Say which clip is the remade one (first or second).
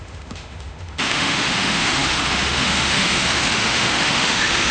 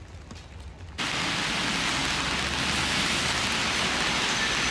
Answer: first